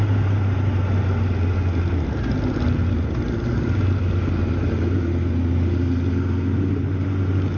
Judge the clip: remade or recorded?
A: recorded